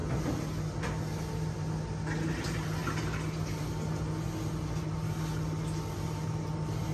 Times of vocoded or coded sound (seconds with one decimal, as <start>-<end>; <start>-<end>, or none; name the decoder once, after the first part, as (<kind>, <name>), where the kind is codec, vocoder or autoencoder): none